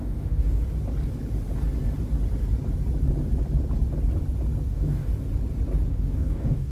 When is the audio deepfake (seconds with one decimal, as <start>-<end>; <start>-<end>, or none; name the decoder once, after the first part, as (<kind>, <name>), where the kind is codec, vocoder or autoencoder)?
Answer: 0.0-0.6 (codec, DAC); 4.6-5.1; 5.9-6.7